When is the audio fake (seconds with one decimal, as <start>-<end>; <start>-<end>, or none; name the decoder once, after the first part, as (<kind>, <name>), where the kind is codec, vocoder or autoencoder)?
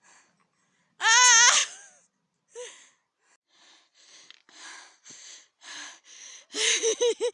none